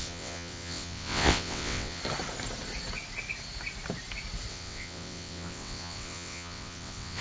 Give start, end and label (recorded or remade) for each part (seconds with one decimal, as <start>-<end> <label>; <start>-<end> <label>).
0.0-2.0 remade; 2.0-4.5 recorded; 4.5-7.2 remade